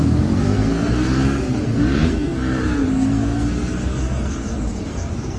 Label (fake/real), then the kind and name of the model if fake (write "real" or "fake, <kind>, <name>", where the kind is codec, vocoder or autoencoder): fake, codec, SNAC